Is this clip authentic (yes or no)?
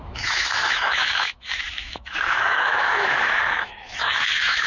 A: no